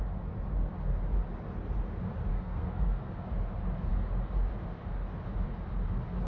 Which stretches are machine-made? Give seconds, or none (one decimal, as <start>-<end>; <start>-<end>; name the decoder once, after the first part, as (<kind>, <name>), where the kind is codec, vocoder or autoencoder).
2.3-3.1 (codec, SNAC)